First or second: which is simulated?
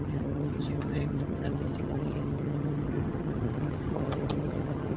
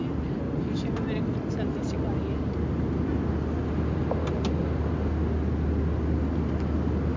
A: first